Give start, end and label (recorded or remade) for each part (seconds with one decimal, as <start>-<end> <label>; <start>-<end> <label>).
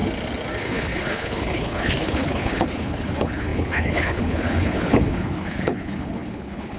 0.0-0.6 recorded; 0.6-6.8 remade